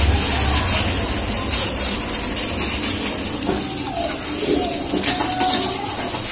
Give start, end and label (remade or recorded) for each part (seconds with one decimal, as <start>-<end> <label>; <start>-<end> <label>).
0.0-1.5 recorded; 1.5-2.0 remade; 2.0-6.3 recorded